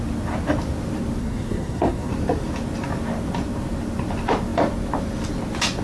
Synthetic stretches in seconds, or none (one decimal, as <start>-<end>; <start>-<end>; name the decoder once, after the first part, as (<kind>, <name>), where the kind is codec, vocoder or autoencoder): 1.2-2.1 (codec, SNAC)